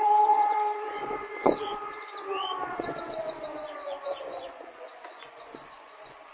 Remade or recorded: remade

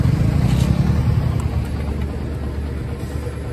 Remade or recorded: recorded